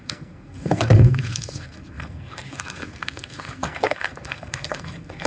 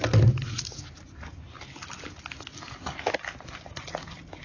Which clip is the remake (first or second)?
first